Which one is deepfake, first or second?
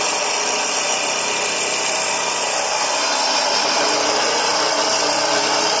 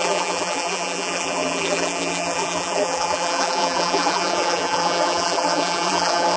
second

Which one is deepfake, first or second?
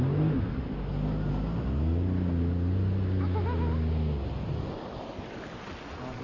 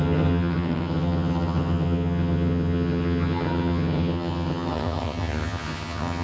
second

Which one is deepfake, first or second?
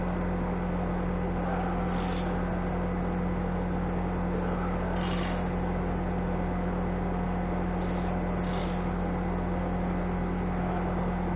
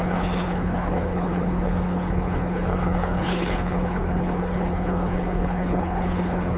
second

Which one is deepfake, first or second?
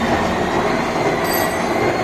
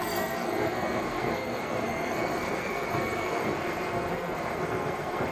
second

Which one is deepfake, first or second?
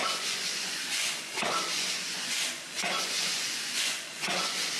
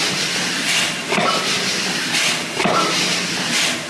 first